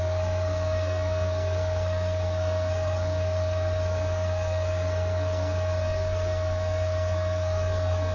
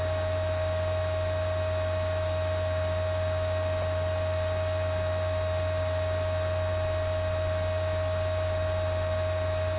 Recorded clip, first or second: second